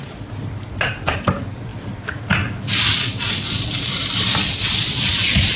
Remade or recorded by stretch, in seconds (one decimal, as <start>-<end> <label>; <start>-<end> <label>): 0.0-5.6 recorded